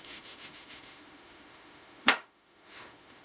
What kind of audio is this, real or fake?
fake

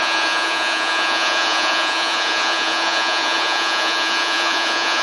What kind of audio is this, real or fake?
fake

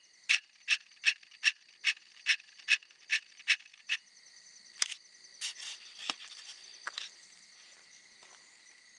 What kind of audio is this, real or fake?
real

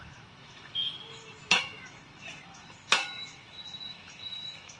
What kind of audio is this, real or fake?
fake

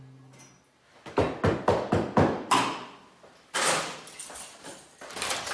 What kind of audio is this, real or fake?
real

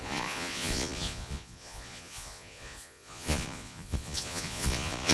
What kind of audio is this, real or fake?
fake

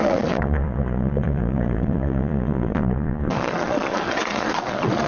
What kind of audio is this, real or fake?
fake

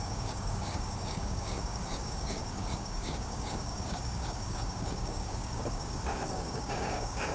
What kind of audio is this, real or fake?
fake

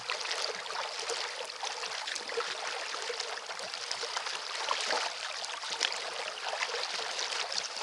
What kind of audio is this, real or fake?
real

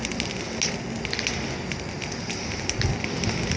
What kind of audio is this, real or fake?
real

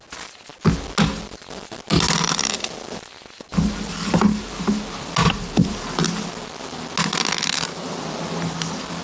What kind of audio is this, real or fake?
real